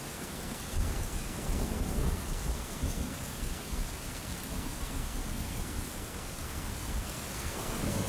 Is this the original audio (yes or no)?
no